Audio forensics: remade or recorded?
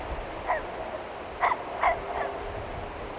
recorded